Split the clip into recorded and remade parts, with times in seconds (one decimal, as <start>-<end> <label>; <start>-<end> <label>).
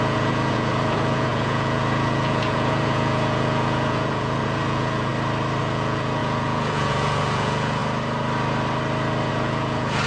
0.0-5.1 remade; 5.1-5.6 recorded; 5.6-7.8 remade; 7.8-9.3 recorded; 9.3-10.1 remade